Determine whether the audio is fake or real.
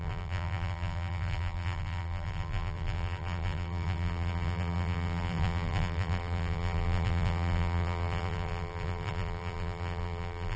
fake